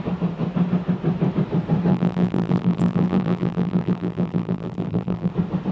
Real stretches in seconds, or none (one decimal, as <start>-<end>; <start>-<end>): 0.0-1.9; 5.3-5.7